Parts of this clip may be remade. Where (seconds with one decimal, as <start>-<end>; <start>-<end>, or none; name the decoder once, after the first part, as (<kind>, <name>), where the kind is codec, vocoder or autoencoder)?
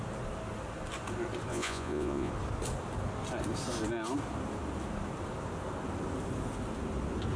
1.5-2.3 (vocoder, Vocos)